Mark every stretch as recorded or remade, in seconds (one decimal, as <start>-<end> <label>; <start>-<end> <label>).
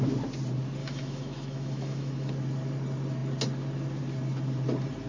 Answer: 0.0-0.8 recorded; 0.8-2.3 remade; 2.3-5.1 recorded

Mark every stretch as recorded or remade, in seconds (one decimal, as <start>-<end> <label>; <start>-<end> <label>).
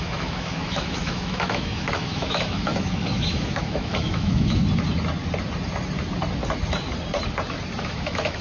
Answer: 0.0-4.6 remade; 4.6-7.8 recorded; 7.8-8.4 remade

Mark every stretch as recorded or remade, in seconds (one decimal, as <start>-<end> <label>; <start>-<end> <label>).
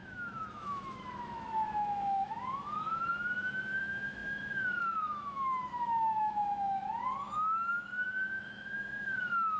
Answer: 0.0-9.6 remade